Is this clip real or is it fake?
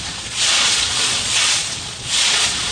fake